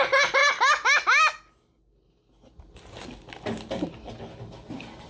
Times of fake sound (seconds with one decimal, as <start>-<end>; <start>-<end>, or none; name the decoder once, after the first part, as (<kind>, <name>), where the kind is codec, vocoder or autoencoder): none